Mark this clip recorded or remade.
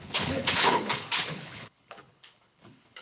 remade